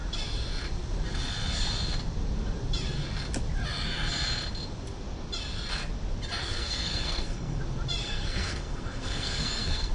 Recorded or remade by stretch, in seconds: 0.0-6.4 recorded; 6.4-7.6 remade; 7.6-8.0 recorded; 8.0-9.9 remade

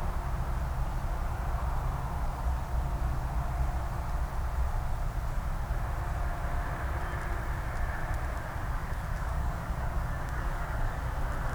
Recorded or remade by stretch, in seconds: 0.0-8.8 recorded; 8.8-11.0 remade; 11.0-11.5 recorded